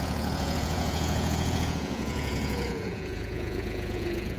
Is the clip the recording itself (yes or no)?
no